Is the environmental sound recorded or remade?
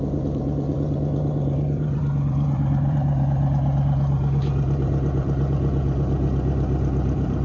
remade